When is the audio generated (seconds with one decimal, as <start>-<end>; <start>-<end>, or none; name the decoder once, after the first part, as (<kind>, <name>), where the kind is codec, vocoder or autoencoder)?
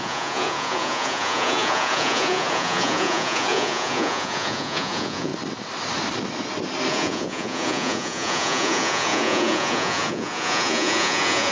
0.0-5.3 (vocoder, Vocos); 6.9-11.5